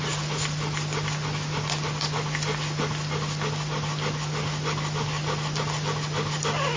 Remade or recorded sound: recorded